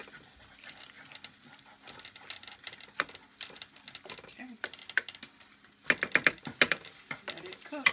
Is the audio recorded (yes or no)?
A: yes